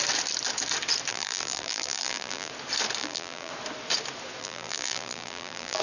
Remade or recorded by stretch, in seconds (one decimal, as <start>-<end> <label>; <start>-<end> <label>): 0.0-1.1 recorded; 1.1-2.5 remade; 2.5-3.0 recorded; 3.0-3.5 remade; 3.5-4.4 recorded; 4.4-5.8 remade